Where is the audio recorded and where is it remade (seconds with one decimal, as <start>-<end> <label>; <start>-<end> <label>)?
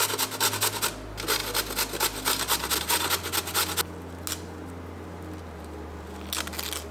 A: 0.0-6.9 recorded